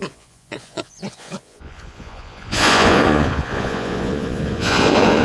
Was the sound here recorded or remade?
remade